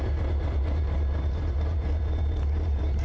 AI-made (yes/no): yes